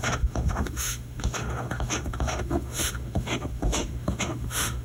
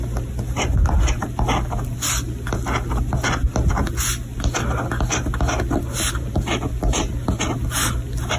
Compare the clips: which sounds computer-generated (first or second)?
first